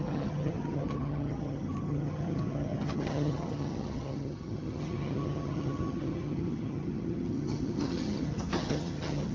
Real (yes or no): no